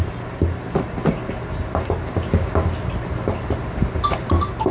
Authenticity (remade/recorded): recorded